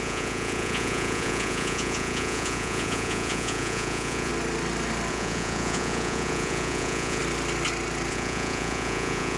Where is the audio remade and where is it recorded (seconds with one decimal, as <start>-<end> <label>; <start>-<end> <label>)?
0.0-4.3 remade; 4.3-5.1 recorded; 5.1-7.2 remade; 7.2-8.1 recorded; 8.1-9.4 remade